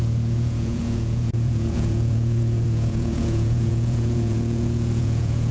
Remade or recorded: remade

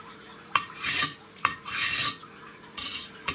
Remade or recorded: remade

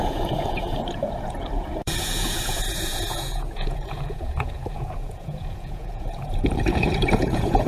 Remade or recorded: remade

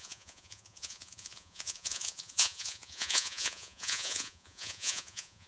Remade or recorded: remade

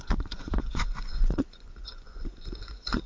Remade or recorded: remade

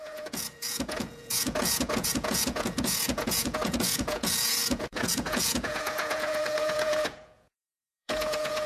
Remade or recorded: remade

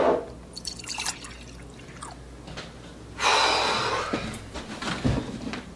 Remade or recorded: recorded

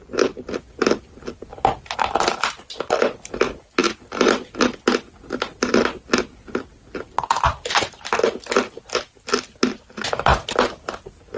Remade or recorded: recorded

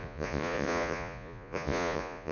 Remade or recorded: remade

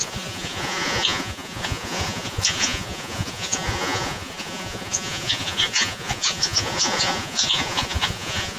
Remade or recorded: remade